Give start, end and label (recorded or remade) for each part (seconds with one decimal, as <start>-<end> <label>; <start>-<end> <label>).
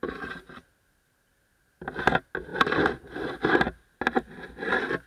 0.0-0.8 remade; 0.8-5.1 recorded